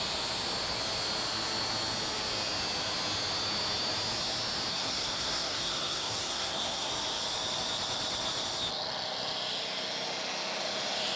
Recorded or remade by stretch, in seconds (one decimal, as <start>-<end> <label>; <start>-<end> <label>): 0.0-4.7 recorded; 4.7-6.9 remade; 6.9-11.2 recorded